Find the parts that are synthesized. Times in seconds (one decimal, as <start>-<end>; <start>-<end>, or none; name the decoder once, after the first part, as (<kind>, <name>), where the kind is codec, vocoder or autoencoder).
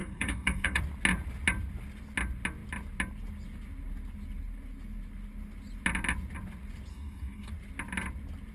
0.0-0.8 (codec, DAC); 6.9-7.5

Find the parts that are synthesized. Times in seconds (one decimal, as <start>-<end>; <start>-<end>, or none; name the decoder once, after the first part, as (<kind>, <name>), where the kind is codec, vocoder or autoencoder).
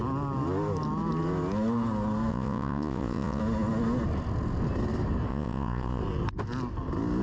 2.3-3.4 (vocoder, Vocos); 5.3-6.0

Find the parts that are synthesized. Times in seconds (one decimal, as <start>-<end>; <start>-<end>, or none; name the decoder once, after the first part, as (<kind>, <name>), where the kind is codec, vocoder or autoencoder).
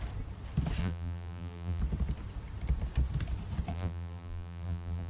0.8-1.8 (vocoder, BigVGAN v2); 3.7-5.1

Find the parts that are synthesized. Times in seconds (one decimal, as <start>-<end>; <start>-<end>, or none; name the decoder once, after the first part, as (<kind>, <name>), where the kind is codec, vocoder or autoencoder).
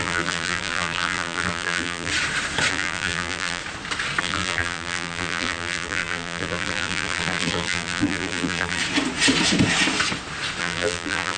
0.0-2.1 (vocoder, BigVGAN v2); 2.7-3.6; 4.2-8.8; 10.6-11.4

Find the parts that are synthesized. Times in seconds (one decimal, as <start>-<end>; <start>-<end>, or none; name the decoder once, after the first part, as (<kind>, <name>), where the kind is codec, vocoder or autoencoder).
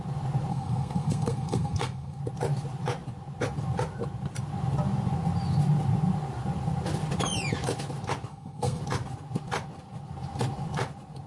0.5-2.2 (codec, SNAC); 8.3-8.8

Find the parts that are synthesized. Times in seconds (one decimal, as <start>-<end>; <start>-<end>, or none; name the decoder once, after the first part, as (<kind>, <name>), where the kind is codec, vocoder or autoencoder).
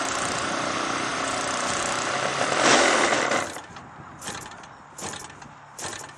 none